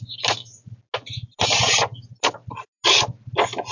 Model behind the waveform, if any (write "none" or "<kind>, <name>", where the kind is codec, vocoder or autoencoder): none